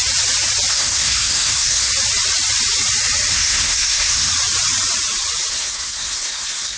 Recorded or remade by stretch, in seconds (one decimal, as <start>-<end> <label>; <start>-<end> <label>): 0.0-0.7 recorded; 0.7-1.9 remade; 1.9-3.3 recorded; 3.3-4.3 remade; 4.3-5.5 recorded; 5.5-6.8 remade